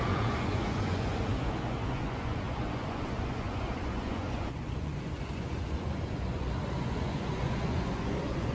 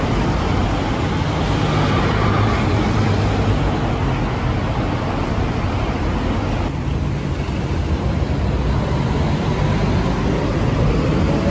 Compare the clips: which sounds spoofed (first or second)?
first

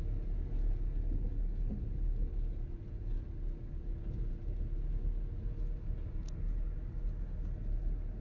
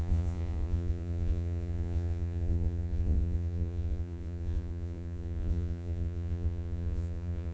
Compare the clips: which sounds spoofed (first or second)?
second